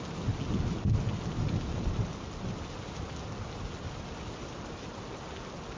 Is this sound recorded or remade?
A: recorded